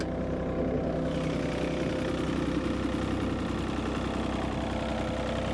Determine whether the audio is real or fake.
real